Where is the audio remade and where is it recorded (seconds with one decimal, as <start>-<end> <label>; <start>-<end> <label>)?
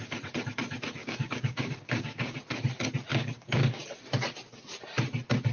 0.0-1.0 recorded; 1.0-2.4 remade; 2.4-3.1 recorded; 3.1-3.8 remade; 3.8-5.5 recorded